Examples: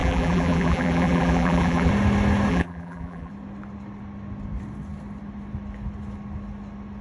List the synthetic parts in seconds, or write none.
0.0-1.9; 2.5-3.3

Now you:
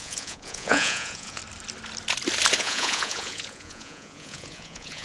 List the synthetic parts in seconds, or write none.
0.0-1.4; 2.6-5.0